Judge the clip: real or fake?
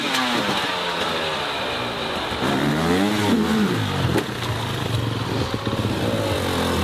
real